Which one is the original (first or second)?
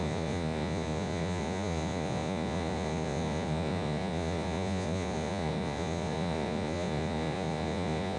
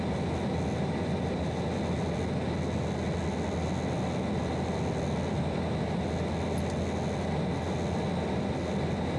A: second